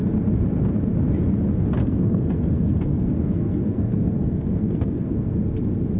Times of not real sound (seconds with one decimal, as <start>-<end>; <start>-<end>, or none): 1.8-5.4